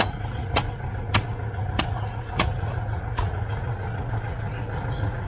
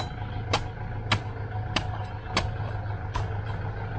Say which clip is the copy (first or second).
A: first